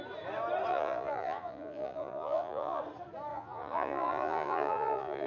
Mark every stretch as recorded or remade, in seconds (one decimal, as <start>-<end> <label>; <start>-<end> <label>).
0.0-0.7 recorded; 0.7-2.8 remade; 2.8-3.3 recorded; 3.3-5.3 remade